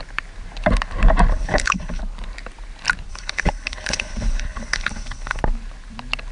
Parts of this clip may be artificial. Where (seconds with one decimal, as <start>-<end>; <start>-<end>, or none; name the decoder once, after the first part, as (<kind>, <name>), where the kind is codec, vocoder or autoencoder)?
1.3-2.0 (codec, HILCodec); 3.1-5.4